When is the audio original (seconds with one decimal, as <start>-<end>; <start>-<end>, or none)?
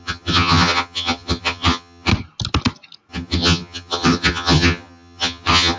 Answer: 2.1-3.1